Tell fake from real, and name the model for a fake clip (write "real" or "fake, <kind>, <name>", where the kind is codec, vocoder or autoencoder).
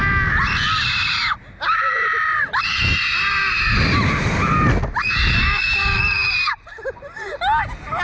real